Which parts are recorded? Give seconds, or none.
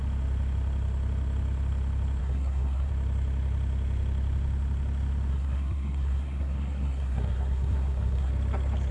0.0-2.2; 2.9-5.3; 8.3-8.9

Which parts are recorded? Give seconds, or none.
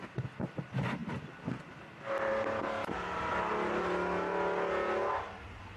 0.0-5.8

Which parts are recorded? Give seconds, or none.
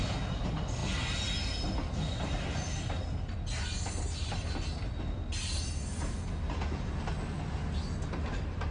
0.0-8.7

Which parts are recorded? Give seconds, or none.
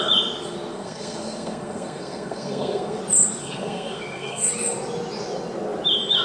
0.0-0.7; 3.0-3.4; 4.5-6.2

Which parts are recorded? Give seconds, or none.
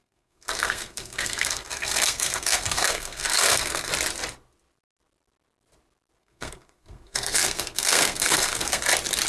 3.9-6.2; 8.8-9.3